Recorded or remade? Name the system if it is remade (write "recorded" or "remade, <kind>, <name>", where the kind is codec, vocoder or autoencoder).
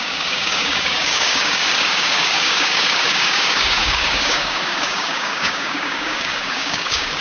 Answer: remade, codec, DAC